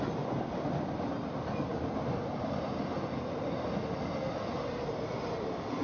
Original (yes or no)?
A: yes